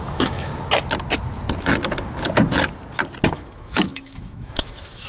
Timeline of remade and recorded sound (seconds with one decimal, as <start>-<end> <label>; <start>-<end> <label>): 0.0-0.5 remade; 0.5-3.3 recorded; 3.3-5.1 remade